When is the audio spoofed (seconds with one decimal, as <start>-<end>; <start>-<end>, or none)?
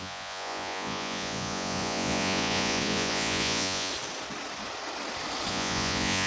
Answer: 0.0-3.9; 5.5-6.3